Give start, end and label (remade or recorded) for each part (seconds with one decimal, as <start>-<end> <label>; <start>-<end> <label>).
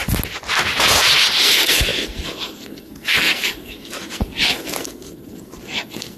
0.0-1.4 recorded; 1.4-6.2 remade